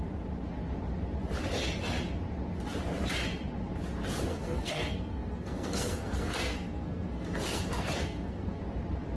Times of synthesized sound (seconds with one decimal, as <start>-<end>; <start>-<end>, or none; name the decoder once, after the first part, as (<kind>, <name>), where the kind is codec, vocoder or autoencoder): 4.3-8.6 (codec, SNAC)